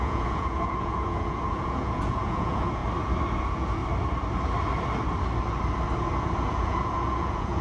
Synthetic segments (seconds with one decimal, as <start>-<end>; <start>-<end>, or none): 0.0-2.8; 3.4-3.8; 6.2-7.6